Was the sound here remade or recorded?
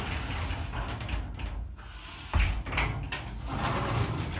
recorded